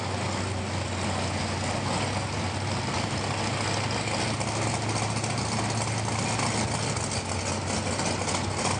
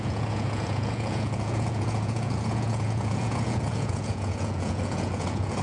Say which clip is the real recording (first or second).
first